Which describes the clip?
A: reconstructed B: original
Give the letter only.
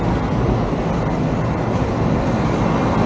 B